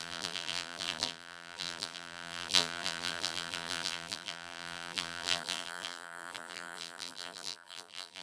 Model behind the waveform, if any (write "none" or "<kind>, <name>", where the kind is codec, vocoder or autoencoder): vocoder, BigVGAN v2